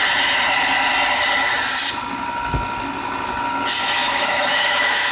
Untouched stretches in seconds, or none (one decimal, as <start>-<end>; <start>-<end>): 0.0-4.0